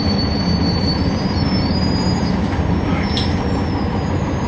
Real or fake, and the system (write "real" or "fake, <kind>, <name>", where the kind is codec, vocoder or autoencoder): real